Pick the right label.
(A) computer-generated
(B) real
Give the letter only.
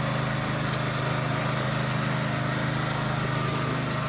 B